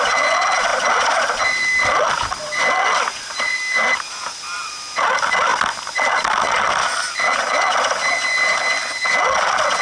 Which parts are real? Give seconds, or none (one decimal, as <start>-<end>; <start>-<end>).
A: 0.0-0.7; 1.4-9.8